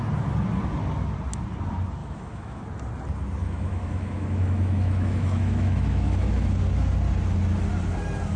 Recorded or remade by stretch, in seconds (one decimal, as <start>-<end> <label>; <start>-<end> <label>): 0.0-2.0 recorded; 2.0-2.6 remade; 2.6-3.4 recorded; 3.4-6.6 remade; 6.6-8.4 recorded